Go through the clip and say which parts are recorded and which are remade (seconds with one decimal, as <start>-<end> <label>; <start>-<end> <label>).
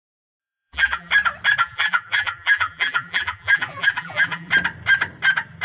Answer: 0.0-0.4 recorded; 0.4-1.1 remade; 1.1-1.6 recorded; 1.6-4.5 remade; 4.5-5.6 recorded